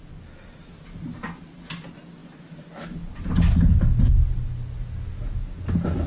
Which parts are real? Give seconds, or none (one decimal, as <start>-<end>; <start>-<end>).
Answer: 0.0-6.1